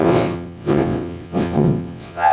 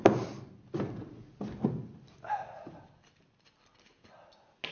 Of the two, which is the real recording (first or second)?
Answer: second